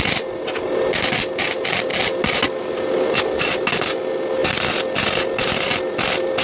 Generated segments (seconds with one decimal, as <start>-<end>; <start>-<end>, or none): none